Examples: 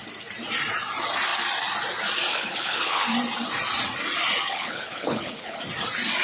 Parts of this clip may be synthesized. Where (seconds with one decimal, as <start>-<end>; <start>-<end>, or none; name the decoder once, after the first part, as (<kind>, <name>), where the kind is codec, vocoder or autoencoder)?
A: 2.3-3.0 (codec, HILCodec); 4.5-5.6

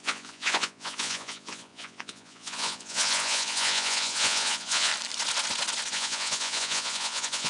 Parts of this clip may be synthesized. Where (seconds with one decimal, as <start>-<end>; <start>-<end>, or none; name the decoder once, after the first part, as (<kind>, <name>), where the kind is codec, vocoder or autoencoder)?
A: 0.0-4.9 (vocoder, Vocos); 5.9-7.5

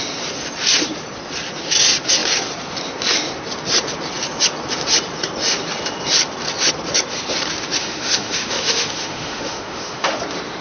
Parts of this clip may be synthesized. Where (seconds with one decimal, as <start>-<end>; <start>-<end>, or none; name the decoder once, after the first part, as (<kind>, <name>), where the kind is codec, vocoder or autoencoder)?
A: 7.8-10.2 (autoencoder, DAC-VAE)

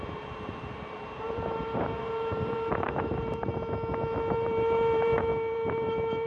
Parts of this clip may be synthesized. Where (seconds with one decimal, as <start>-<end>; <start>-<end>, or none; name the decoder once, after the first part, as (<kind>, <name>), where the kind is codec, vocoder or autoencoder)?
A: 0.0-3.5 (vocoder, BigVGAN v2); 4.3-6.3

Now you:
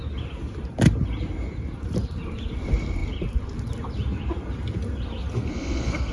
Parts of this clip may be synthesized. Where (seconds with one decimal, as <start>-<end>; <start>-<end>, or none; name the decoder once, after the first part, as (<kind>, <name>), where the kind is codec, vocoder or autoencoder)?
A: 5.3-6.1 (codec, SNAC)

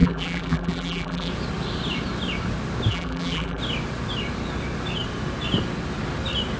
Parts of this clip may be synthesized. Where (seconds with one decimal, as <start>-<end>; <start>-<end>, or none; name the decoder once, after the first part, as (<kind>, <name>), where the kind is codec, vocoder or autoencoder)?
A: 0.0-1.3 (vocoder, BigVGAN v2); 2.9-3.6

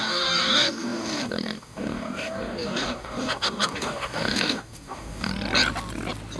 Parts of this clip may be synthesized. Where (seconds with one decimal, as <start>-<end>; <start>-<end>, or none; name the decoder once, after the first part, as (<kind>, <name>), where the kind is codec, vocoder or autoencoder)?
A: 0.0-5.3 (codec, DAC)